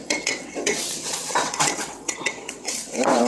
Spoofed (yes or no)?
yes